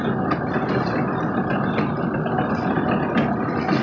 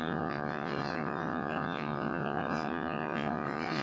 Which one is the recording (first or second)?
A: first